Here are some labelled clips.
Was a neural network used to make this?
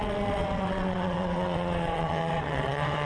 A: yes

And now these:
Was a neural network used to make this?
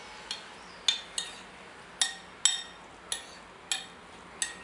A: no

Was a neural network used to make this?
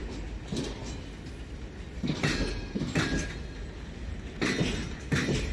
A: no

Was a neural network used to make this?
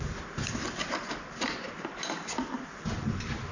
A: no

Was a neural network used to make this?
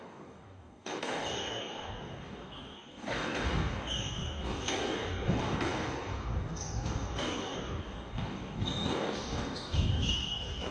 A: yes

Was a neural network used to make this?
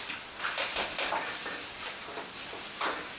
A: no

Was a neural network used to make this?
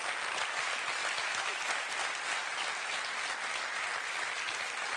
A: no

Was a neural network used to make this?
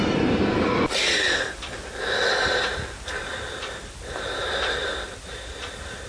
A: no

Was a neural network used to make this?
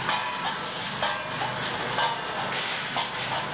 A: no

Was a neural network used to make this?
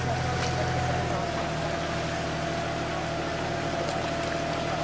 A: no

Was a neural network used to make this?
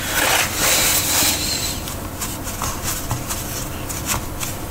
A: no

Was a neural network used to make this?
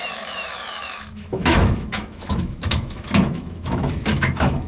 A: yes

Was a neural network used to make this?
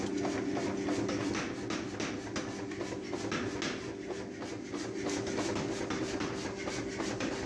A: no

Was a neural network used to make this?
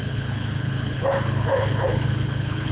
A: yes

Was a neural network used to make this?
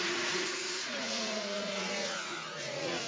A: yes